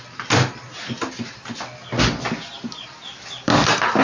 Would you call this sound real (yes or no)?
yes